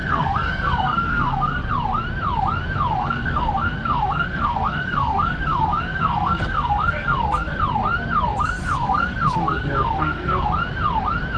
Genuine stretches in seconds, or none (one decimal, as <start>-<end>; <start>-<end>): 1.7-3.0; 7.6-8.3; 10.5-11.4